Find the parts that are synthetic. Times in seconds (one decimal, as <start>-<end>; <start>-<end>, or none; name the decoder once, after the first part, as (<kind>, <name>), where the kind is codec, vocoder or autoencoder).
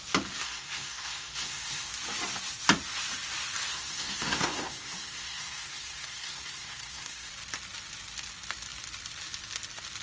0.4-1.9 (codec, SNAC); 3.7-7.3